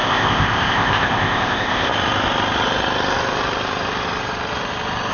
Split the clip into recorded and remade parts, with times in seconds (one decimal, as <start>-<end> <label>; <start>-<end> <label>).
0.0-1.9 remade; 1.9-5.1 recorded

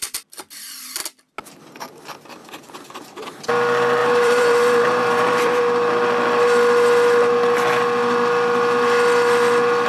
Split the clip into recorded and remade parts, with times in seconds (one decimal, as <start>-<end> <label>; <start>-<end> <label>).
0.0-2.4 recorded; 2.4-3.5 remade; 3.5-4.0 recorded; 4.0-5.6 remade; 5.6-9.9 recorded

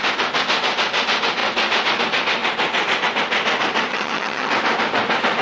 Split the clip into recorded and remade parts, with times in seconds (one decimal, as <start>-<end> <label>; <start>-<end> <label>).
0.0-3.9 recorded; 3.9-4.5 remade; 4.5-5.4 recorded

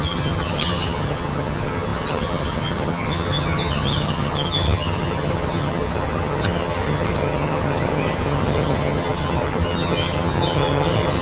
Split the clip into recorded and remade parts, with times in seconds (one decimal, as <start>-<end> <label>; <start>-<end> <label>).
0.0-11.2 remade

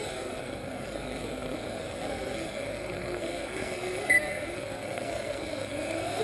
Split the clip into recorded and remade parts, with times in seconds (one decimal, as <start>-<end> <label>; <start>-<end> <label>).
0.0-6.2 remade

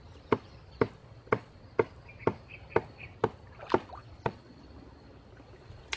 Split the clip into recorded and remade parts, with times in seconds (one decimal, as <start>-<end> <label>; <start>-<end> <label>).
0.0-1.0 recorded; 1.0-1.6 remade; 1.6-4.0 recorded; 4.0-4.6 remade; 4.6-6.0 recorded

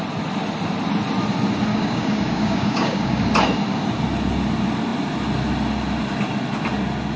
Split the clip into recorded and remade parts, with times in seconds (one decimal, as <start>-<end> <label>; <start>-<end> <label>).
0.0-1.7 recorded; 1.7-3.2 remade; 3.2-7.2 recorded

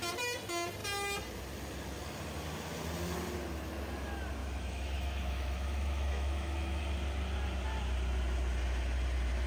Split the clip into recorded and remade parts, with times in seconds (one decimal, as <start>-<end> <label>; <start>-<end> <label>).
0.0-4.4 recorded; 4.4-6.8 remade; 6.8-9.5 recorded